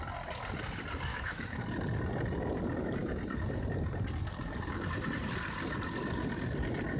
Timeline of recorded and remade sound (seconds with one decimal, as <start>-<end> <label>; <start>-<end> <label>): 0.0-1.1 recorded; 1.1-1.6 remade; 1.6-7.0 recorded